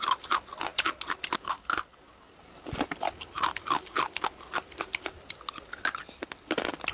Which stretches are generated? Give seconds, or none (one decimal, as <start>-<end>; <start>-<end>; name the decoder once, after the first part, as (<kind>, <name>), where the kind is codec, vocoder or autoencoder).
none